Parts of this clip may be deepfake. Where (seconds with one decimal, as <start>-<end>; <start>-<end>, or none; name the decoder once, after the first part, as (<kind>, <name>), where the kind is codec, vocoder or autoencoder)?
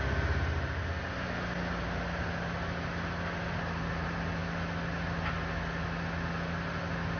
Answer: none